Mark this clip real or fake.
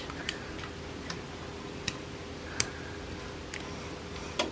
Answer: real